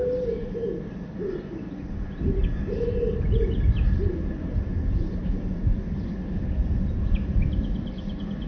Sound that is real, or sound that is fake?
real